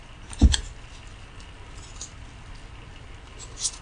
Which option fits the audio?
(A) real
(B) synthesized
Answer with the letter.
A